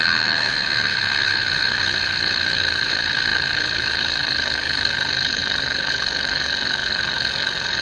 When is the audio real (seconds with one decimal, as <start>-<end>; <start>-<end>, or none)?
none